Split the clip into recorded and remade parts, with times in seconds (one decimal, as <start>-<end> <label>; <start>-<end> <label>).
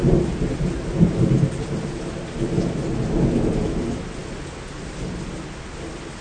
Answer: 0.0-6.2 recorded